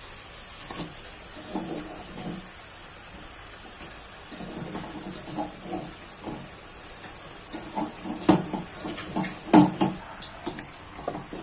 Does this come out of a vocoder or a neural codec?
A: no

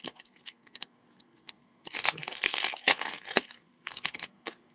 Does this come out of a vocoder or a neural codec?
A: yes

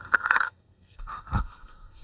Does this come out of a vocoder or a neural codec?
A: yes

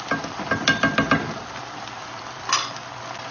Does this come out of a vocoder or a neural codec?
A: yes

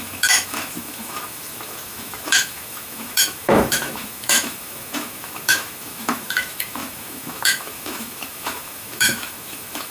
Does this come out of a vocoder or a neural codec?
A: yes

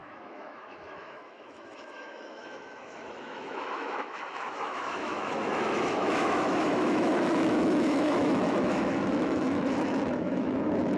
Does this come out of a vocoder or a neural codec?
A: yes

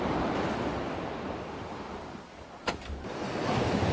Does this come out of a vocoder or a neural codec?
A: no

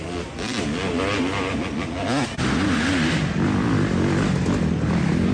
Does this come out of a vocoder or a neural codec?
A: no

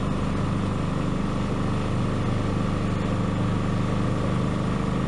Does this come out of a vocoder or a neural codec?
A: no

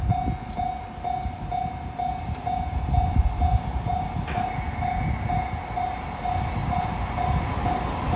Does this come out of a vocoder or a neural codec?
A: no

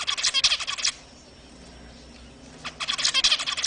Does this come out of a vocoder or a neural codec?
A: no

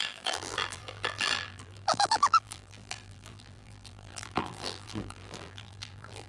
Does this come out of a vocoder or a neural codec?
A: yes